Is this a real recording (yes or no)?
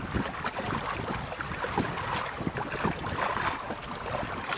yes